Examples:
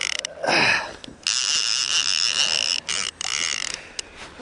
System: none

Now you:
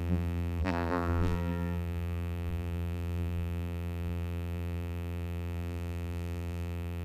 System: vocoder, BigVGAN v2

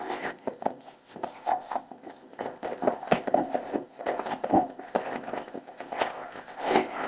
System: codec, ZipCodec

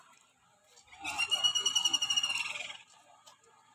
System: none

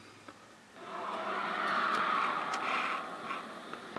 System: none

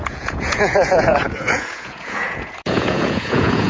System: vocoder, Vocos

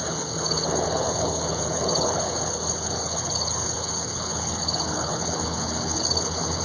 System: codec, HILCodec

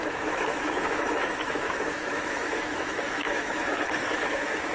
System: autoencoder, DAC-VAE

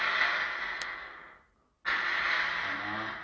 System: none